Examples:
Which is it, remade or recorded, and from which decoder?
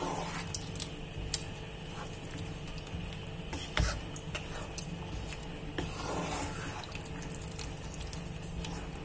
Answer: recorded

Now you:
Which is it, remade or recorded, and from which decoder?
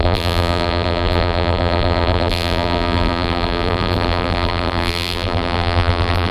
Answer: remade, vocoder, BigVGAN v2